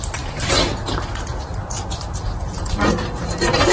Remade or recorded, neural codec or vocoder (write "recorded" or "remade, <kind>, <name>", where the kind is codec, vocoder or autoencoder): remade, vocoder, BigVGAN v2